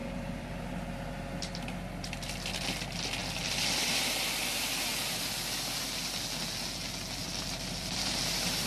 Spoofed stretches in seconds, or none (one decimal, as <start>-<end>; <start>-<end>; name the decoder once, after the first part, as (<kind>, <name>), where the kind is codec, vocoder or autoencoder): 0.0-0.7 (vocoder, BigVGAN v2); 7.2-8.2